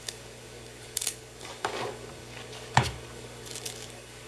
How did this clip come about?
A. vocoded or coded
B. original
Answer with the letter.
A